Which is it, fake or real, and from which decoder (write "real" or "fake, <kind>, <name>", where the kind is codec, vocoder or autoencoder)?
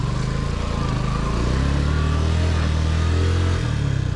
real